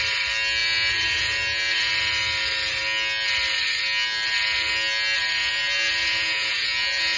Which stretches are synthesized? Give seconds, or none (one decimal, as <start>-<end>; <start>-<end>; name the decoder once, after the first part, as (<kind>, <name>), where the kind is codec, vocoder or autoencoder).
0.6-1.9 (vocoder, Vocos); 5.4-7.2